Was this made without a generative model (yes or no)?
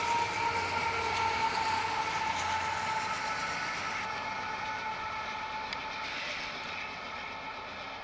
yes